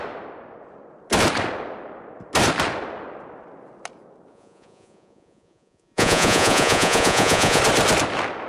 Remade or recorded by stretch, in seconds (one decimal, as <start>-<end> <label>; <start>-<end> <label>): 0.0-4.3 recorded; 4.3-7.6 remade; 7.6-8.5 recorded